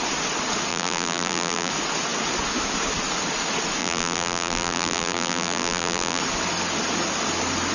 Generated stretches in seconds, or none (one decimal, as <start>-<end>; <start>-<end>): 0.7-1.7; 3.8-6.2